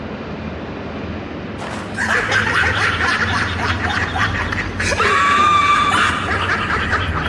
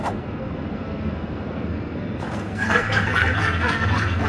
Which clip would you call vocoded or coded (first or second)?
second